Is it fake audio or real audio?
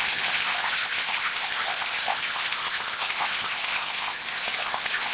fake